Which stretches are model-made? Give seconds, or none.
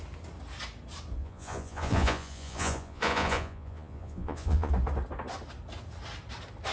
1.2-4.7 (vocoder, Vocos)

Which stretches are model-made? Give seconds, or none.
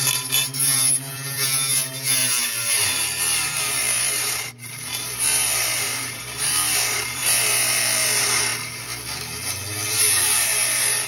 0.0-8.5 (vocoder, BigVGAN v2); 9.9-11.1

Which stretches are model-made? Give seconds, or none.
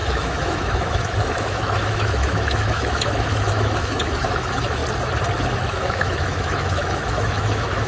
0.0-4.8 (autoencoder, DAC-VAE); 5.4-7.9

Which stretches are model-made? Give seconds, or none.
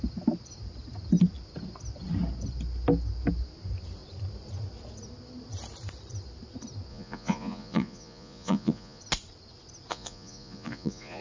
6.9-9.0 (vocoder, Vocos); 9.9-11.2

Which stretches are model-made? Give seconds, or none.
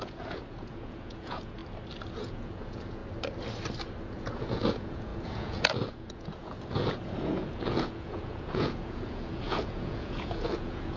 0.0-1.6 (vocoder, Vocos); 2.1-3.0; 4.0-11.0